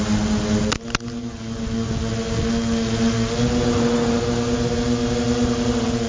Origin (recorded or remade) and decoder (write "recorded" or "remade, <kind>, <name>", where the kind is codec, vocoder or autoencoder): recorded